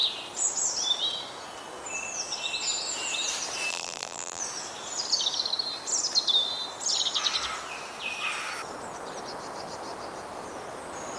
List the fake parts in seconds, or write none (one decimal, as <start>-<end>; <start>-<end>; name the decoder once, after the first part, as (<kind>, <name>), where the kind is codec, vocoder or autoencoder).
3.7-4.4 (vocoder, BigVGAN v2)